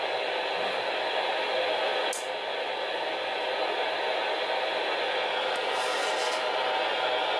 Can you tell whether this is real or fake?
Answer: real